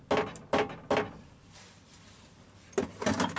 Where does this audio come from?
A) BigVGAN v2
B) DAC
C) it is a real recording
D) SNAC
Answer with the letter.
C